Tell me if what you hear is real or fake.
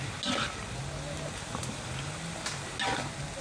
real